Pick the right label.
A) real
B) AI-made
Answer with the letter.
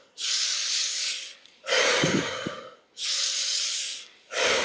B